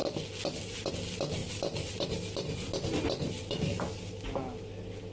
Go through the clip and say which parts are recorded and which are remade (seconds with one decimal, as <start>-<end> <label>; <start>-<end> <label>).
0.0-5.1 recorded